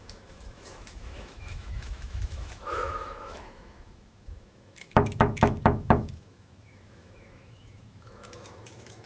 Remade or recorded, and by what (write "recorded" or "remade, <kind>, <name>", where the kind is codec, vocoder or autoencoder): remade, autoencoder, DAC-VAE